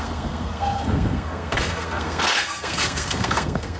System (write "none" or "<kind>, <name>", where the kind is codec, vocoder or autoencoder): codec, SNAC